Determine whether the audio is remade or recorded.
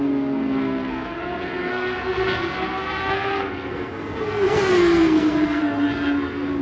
remade